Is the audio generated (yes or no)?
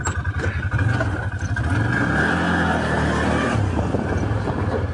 no